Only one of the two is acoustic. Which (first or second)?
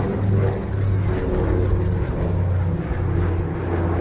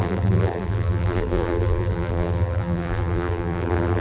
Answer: first